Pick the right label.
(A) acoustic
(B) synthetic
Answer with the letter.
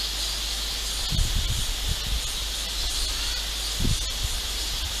A